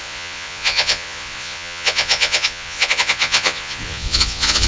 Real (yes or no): no